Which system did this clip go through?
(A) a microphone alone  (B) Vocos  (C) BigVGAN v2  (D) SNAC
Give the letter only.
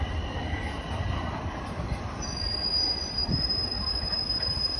C